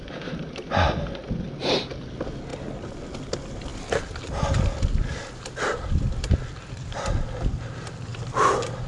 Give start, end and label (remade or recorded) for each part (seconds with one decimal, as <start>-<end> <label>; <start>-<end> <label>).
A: 0.0-8.9 recorded